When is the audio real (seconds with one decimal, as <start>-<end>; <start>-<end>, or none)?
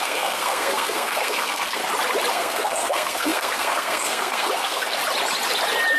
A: 1.8-2.3; 5.0-6.0